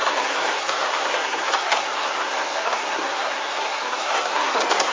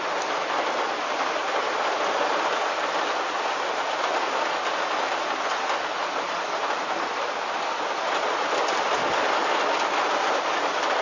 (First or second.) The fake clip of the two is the first